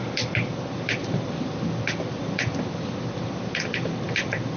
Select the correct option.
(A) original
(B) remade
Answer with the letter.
A